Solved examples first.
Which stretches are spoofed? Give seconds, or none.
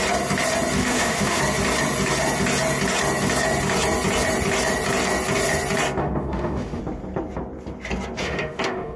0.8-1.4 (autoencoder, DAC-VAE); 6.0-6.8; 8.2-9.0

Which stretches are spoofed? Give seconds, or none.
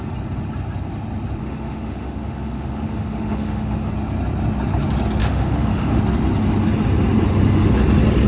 1.4-3.9 (autoencoder, DAC-VAE); 5.2-6.0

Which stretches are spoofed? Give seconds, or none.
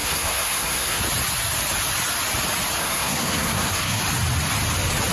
0.0-1.0 (codec, SNAC); 2.8-4.0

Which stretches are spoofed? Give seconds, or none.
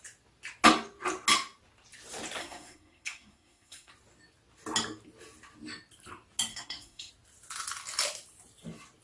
2.4-3.9 (codec, SNAC); 6.5-7.1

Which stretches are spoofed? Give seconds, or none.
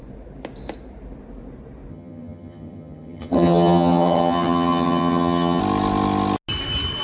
1.9-5.6 (vocoder, HiFi-GAN)